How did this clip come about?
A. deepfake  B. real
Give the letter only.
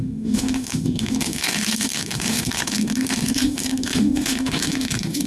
A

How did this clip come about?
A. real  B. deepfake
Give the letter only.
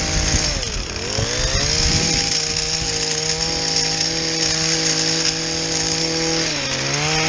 A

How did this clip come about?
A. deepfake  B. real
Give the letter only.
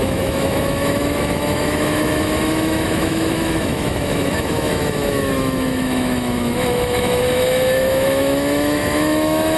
A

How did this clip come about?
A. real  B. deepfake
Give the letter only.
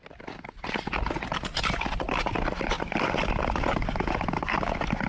A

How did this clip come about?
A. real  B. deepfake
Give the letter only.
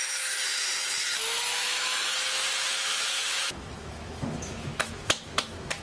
B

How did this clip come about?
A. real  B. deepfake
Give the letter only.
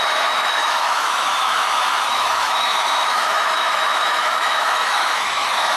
B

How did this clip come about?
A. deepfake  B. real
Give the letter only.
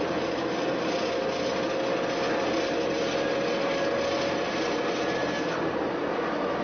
B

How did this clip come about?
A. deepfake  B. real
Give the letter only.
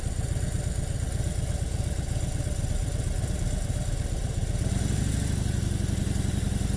B